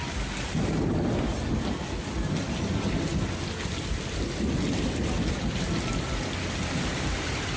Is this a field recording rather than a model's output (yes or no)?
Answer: yes